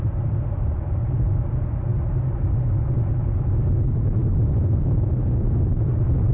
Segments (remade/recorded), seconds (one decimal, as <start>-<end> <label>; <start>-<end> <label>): 0.0-1.9 remade; 1.9-3.8 recorded; 3.8-6.3 remade